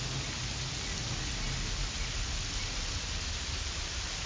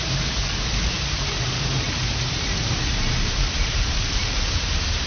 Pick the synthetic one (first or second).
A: second